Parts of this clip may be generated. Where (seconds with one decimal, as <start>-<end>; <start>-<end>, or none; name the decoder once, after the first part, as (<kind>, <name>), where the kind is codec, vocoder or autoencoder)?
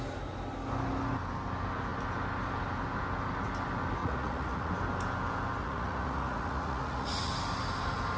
4.0-4.7 (vocoder, Vocos); 5.6-7.3